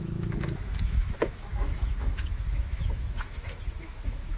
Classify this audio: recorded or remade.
remade